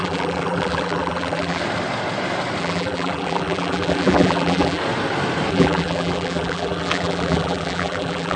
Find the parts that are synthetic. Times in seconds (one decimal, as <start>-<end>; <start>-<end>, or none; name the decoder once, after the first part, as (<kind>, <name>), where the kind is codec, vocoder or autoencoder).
0.0-1.6 (vocoder, BigVGAN v2); 2.6-4.8; 5.5-8.4